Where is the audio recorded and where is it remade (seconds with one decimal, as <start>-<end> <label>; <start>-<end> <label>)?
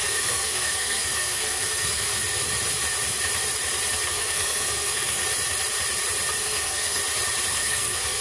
0.0-2.1 remade; 2.1-4.1 recorded; 4.1-5.2 remade; 5.2-6.4 recorded; 6.4-7.0 remade; 7.0-7.5 recorded; 7.5-8.2 remade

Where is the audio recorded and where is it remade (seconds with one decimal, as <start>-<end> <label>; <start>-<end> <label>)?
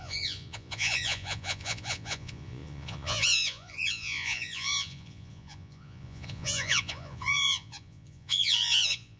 0.0-9.2 remade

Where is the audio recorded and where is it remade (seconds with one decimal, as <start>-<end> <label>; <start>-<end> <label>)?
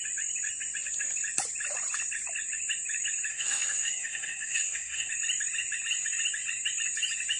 0.0-3.3 recorded; 3.3-5.1 remade; 5.1-7.4 recorded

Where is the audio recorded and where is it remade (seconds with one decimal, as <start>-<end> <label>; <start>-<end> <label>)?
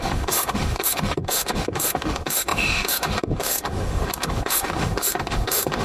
0.0-5.8 remade